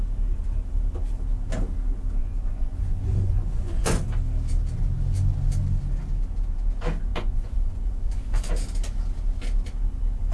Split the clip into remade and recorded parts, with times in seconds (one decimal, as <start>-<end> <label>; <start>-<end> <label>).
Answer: 0.0-2.2 recorded; 2.2-4.0 remade; 4.0-7.1 recorded; 7.1-8.5 remade; 8.5-10.3 recorded